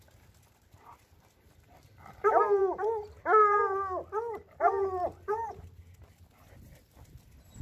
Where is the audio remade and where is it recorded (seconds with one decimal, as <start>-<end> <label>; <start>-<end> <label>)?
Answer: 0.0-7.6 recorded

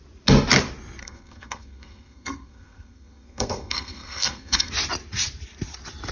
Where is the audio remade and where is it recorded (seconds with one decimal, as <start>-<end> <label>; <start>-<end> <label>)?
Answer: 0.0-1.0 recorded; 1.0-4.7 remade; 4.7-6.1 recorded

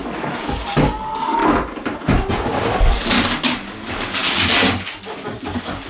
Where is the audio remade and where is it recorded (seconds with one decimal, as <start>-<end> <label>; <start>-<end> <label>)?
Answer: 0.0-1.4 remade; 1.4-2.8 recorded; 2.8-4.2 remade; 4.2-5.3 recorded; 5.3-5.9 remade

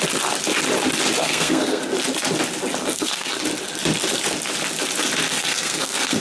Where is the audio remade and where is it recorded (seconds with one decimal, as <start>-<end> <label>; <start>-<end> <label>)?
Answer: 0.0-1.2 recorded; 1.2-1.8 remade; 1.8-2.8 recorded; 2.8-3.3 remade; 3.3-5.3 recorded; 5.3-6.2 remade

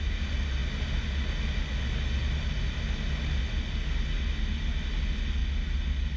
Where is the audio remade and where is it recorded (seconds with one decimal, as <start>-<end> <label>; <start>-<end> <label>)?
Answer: 0.0-6.2 recorded

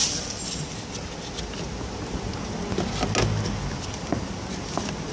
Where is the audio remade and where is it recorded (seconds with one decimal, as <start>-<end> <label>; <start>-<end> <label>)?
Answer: 0.0-5.1 recorded

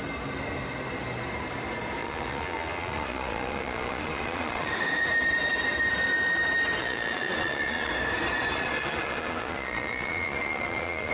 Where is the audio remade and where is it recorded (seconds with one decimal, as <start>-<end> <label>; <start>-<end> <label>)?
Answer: 0.0-2.0 recorded; 2.0-4.7 remade; 4.7-6.8 recorded; 6.8-7.9 remade; 7.9-8.5 recorded; 8.5-11.1 remade